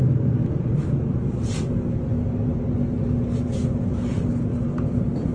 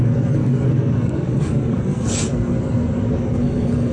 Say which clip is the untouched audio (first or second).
first